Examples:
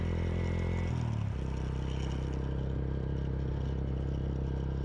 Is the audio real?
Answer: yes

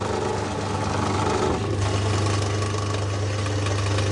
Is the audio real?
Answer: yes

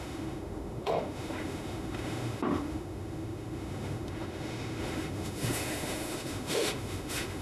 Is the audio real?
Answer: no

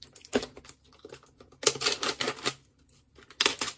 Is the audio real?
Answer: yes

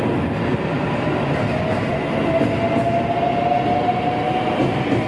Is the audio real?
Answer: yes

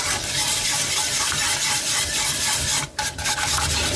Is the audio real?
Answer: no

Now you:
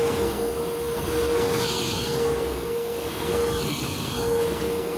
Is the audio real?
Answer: no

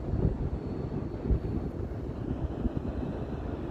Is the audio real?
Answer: yes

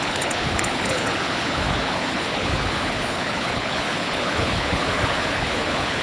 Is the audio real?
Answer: no